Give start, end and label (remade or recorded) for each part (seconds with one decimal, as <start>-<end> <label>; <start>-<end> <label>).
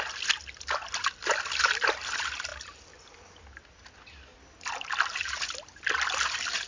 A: 0.0-6.7 recorded